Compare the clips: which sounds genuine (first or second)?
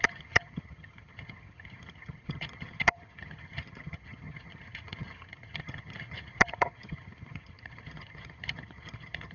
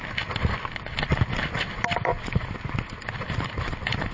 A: second